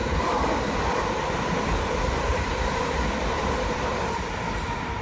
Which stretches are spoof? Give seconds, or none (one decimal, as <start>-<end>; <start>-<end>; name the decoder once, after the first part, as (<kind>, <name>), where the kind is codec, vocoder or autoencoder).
0.0-5.0 (vocoder, BigVGAN v2)